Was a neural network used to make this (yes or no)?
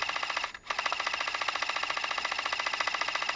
no